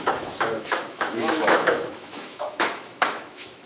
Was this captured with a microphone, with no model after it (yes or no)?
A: no